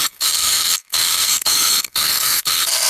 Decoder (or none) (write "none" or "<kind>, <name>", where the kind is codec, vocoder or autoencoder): codec, SNAC